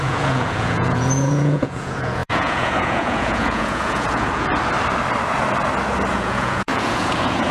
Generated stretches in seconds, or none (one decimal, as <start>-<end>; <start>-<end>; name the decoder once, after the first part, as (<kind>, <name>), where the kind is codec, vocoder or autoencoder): 0.0-4.5 (vocoder, Vocos); 6.1-7.5